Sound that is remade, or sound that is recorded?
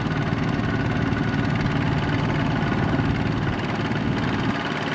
recorded